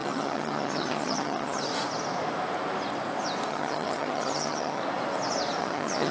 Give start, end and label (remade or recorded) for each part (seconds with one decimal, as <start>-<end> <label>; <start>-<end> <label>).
0.0-1.7 remade; 1.7-3.5 recorded; 3.5-4.8 remade; 4.8-5.6 recorded; 5.6-6.1 remade